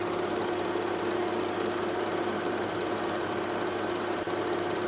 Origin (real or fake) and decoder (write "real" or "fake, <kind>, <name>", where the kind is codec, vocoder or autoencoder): real